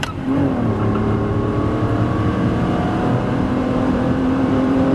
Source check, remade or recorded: remade